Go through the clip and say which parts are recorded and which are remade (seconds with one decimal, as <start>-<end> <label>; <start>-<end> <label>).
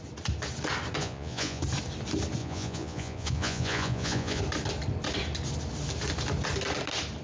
0.0-1.0 recorded; 1.0-1.6 remade; 1.6-2.4 recorded; 2.4-4.4 remade; 4.4-7.2 recorded